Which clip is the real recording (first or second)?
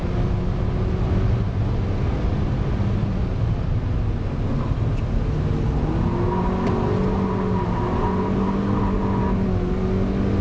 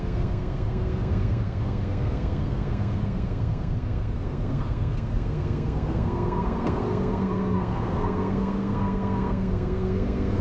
first